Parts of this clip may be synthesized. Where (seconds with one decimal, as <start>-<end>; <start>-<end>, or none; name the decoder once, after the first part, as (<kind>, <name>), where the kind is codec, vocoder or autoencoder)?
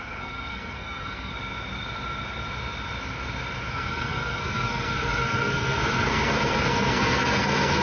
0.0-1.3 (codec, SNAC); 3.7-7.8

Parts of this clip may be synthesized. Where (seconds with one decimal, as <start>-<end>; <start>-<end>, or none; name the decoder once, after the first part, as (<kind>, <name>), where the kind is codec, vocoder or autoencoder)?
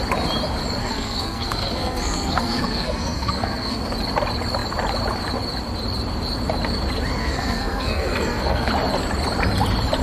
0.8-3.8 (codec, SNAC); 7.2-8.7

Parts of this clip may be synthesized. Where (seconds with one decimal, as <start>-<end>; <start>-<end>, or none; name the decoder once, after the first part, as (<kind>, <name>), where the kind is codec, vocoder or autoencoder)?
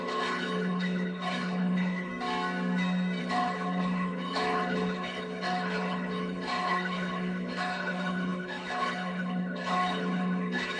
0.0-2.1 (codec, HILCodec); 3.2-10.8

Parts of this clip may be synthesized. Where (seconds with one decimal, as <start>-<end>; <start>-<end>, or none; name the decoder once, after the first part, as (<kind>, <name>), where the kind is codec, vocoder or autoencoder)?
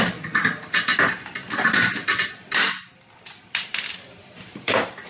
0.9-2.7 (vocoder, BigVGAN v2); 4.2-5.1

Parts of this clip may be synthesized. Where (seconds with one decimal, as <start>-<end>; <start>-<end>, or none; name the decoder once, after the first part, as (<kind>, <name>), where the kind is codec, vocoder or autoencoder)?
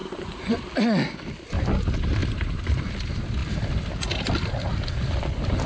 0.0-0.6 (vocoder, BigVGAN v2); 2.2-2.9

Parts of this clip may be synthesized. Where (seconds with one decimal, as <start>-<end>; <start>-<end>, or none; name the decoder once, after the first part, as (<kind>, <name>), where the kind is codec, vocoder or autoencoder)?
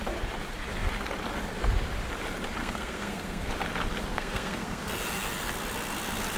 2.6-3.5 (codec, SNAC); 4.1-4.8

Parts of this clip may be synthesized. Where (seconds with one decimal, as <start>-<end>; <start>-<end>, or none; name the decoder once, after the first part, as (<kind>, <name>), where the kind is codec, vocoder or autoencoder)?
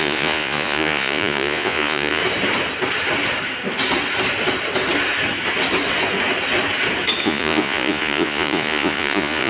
0.0-2.2 (vocoder, Vocos); 7.2-9.5